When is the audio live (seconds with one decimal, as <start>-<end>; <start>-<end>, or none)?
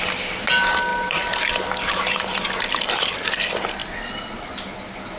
0.0-0.9; 1.5-5.2